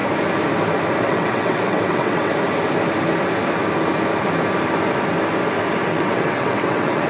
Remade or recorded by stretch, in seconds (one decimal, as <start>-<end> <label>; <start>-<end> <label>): 0.0-1.0 recorded; 1.0-2.3 remade; 2.3-5.9 recorded; 5.9-7.1 remade